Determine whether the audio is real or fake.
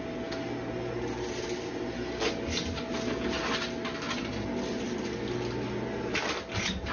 real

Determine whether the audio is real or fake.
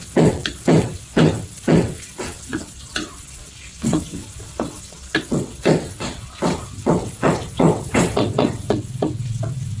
fake